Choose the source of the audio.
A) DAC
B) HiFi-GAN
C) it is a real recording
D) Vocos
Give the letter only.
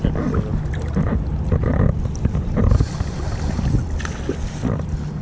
C